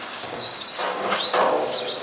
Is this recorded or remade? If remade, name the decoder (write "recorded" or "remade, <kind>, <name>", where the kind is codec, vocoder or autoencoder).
remade, codec, DAC